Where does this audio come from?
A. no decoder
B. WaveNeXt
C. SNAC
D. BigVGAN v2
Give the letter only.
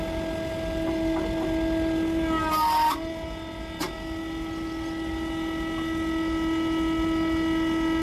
A